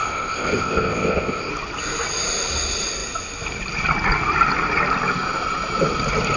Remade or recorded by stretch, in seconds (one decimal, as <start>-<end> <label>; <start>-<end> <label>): 0.0-1.5 remade; 1.5-6.4 recorded